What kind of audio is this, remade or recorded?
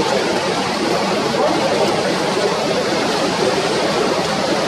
remade